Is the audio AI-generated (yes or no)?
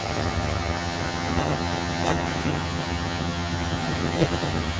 yes